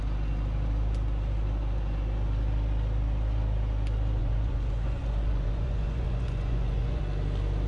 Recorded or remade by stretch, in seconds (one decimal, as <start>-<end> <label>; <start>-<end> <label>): 0.0-4.2 recorded; 4.2-7.0 remade; 7.0-7.7 recorded